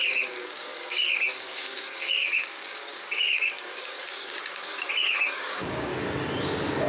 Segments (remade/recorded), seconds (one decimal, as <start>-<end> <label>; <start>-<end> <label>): 0.0-5.9 remade; 5.9-6.9 recorded